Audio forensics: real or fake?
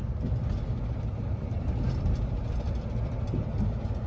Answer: real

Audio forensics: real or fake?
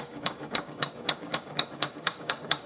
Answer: fake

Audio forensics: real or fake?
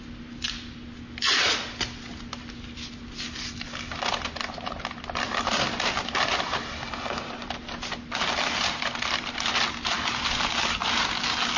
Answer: real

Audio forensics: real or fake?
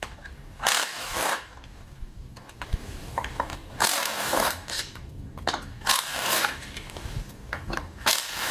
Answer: fake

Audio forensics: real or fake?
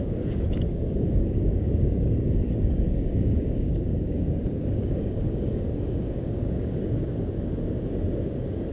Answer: fake